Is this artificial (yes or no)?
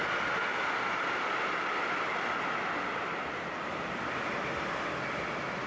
no